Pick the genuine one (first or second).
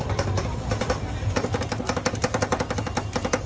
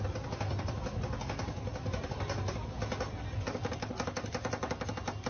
second